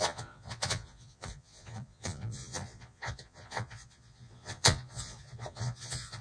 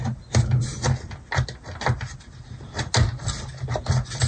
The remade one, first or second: first